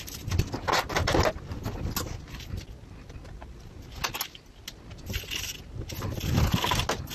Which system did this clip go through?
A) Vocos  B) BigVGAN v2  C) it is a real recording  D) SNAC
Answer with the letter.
C